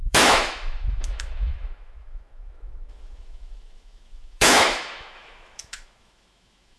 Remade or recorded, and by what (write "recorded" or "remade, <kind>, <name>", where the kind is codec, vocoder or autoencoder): remade, autoencoder, DAC-VAE